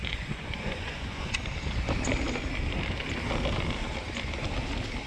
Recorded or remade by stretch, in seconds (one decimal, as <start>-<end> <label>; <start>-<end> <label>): 0.0-1.4 remade; 1.4-5.1 recorded